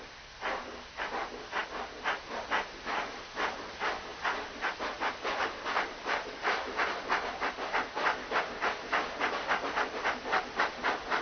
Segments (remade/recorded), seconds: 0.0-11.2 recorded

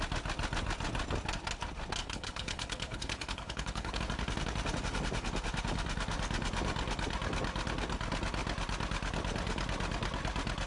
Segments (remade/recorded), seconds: 0.0-2.0 recorded; 2.0-4.0 remade; 4.0-10.7 recorded